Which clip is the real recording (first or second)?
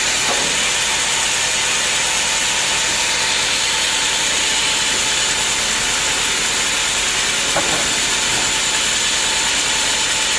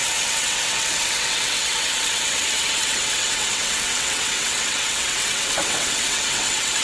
first